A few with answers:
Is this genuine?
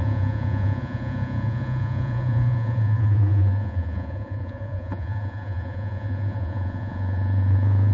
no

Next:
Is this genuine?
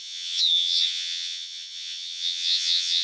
no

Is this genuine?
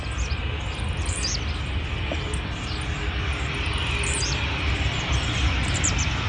yes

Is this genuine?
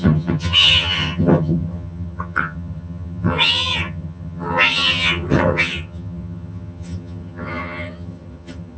no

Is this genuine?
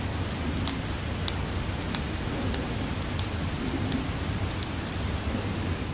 yes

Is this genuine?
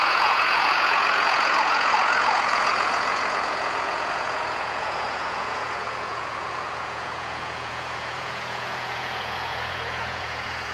no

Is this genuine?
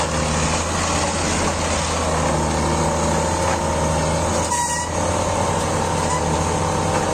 yes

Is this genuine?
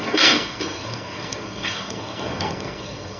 no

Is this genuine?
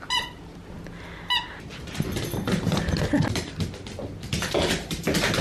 yes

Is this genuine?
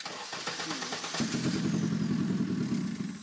yes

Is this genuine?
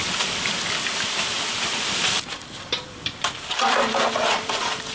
no